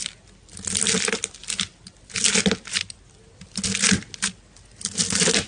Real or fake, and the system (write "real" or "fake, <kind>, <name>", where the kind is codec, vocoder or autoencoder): real